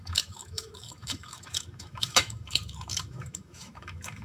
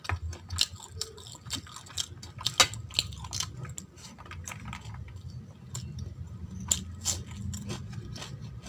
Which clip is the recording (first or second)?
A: second